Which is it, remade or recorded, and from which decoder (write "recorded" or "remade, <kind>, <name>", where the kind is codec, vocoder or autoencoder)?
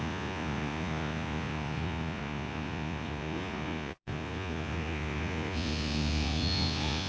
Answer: remade, vocoder, Vocos